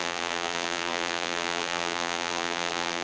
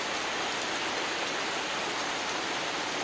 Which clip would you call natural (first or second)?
second